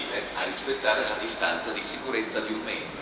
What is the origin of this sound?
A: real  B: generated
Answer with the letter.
A